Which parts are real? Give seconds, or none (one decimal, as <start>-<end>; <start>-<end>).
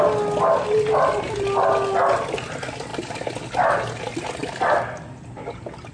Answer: 0.0-5.9